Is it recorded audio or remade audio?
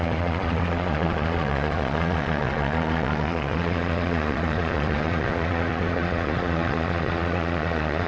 remade